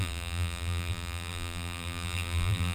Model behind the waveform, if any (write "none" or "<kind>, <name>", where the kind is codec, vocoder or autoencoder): vocoder, BigVGAN v2